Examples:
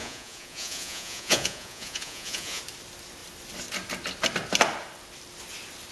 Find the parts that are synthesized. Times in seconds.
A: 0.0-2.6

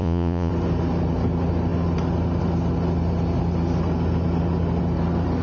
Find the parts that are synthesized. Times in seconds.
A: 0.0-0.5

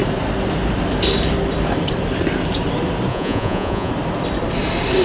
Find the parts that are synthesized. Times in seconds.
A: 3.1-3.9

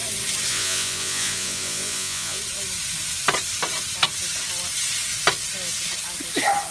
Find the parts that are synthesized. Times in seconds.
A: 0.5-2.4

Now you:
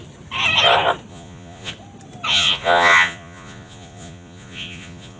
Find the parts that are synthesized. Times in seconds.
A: 1.1-1.7; 2.3-5.2